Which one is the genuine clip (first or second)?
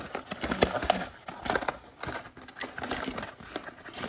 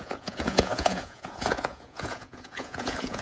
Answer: first